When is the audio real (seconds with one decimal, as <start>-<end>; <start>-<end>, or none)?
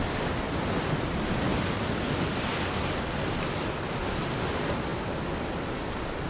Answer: 0.0-6.3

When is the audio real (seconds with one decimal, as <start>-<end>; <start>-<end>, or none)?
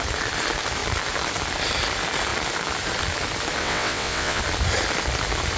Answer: 0.0-3.6; 4.4-5.6